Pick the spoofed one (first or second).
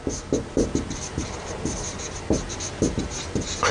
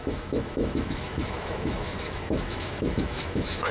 second